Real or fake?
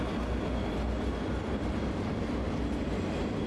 real